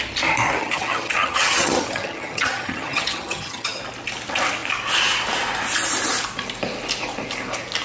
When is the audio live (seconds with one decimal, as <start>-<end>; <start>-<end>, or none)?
0.0-0.6; 3.8-7.8